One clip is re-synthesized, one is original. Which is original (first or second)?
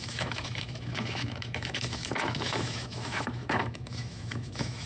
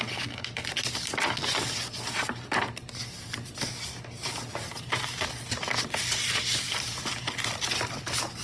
second